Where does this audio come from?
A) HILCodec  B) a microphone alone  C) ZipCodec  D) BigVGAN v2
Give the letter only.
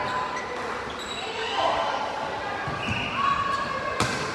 B